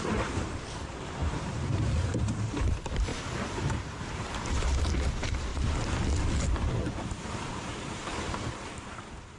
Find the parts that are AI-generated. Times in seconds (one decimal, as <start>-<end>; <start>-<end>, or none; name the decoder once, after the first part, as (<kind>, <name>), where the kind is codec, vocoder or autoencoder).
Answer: 0.0-5.5 (vocoder, BigVGAN v2); 7.4-9.4